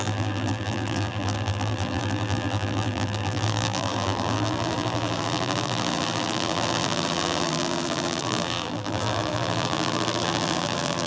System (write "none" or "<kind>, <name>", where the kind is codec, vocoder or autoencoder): vocoder, BigVGAN v2